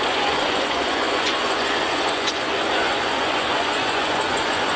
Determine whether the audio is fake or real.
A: fake